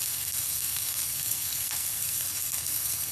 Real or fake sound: fake